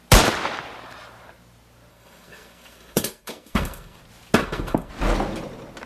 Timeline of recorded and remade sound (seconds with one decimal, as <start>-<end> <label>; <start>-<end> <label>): 0.0-1.9 recorded; 1.9-4.0 remade; 4.0-4.4 recorded; 4.4-4.9 remade; 4.9-5.9 recorded